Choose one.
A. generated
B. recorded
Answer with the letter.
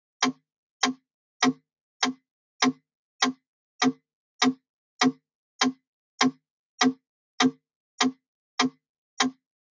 B